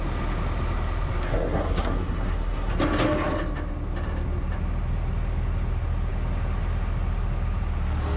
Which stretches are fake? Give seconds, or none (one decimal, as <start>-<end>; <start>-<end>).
1.3-2.7